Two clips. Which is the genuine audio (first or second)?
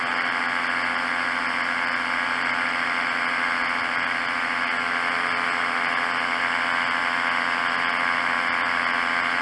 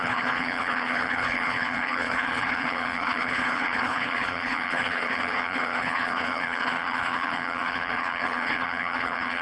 first